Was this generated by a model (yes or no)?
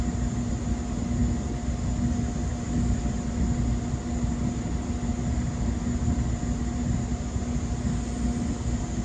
no